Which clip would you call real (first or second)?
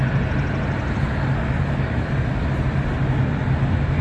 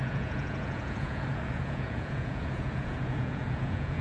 first